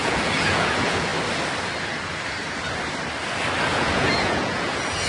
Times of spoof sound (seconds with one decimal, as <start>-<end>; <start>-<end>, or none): 0.0-1.1; 3.6-5.1